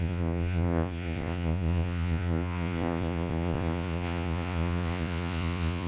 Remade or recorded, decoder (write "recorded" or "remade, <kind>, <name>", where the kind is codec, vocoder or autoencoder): remade, vocoder, Vocos